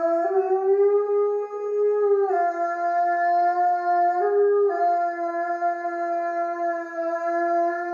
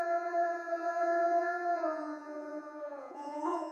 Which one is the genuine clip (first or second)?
first